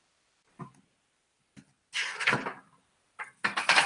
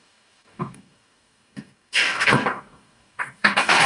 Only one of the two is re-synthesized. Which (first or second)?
second